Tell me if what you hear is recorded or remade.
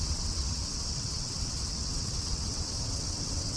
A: remade